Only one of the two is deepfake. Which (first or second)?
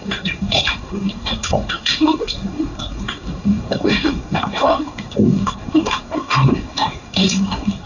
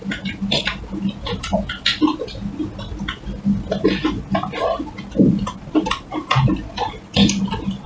first